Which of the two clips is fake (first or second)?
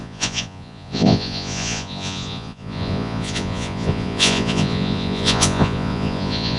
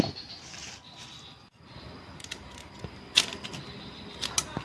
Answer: first